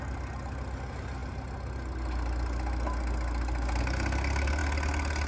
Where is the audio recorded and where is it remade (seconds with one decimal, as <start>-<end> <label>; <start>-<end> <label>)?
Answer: 0.0-5.3 recorded